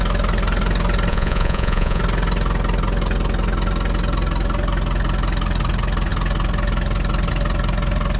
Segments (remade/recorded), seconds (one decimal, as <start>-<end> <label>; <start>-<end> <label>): 0.0-1.1 recorded; 1.1-2.0 remade; 2.0-8.2 recorded

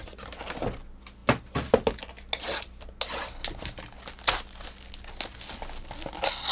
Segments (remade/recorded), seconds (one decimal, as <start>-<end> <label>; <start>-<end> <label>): 0.0-6.5 recorded

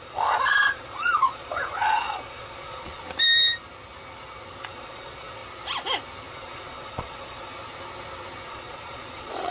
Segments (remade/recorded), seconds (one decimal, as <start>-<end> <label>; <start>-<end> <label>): 0.0-3.0 remade; 3.0-4.6 recorded; 4.6-5.4 remade; 5.4-6.3 recorded; 6.3-7.5 remade; 7.5-8.5 recorded; 8.5-9.5 remade

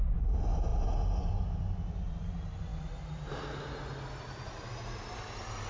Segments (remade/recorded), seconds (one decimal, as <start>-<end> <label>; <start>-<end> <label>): 0.0-5.7 recorded

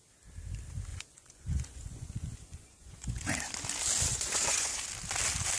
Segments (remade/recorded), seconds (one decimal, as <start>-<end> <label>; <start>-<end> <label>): 0.0-0.9 recorded; 0.9-3.3 remade; 3.3-4.1 recorded; 4.1-4.8 remade; 4.8-5.6 recorded

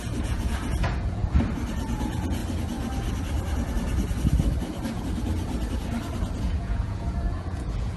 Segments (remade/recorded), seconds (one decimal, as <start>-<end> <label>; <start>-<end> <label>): 0.0-1.2 remade; 1.2-1.7 recorded; 1.7-2.4 remade; 2.4-6.4 recorded; 6.4-8.0 remade

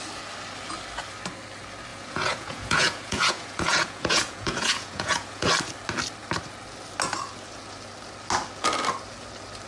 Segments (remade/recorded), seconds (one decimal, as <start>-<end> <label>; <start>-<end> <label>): 0.0-1.9 recorded; 1.9-5.5 remade; 5.5-9.7 recorded